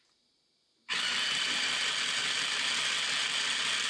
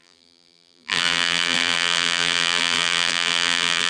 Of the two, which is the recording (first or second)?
first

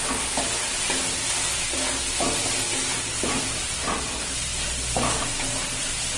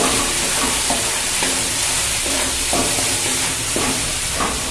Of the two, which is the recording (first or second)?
first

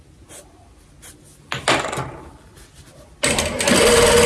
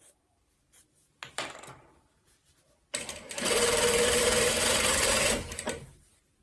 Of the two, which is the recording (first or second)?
first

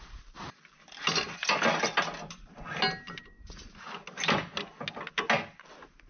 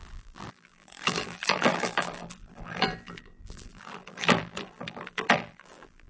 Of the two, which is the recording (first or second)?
first